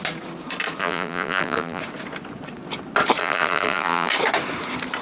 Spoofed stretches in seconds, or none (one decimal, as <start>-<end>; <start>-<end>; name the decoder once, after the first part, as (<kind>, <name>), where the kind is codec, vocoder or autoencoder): 0.8-1.8 (vocoder, BigVGAN v2); 3.2-4.1